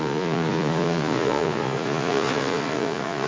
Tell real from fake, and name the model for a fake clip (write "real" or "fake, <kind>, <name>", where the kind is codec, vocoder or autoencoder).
fake, vocoder, Vocos